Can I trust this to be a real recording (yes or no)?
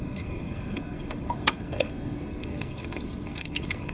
no